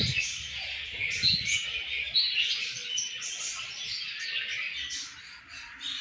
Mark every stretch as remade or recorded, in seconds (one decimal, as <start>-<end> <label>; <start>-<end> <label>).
0.0-6.0 recorded